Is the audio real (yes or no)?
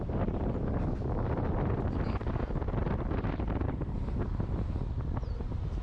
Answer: yes